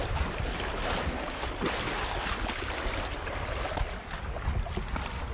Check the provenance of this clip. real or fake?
real